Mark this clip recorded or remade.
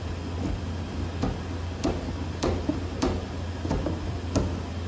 recorded